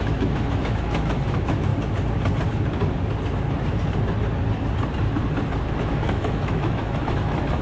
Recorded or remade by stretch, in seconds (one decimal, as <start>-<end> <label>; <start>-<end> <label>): 0.0-1.7 remade; 1.7-5.8 recorded; 5.8-7.6 remade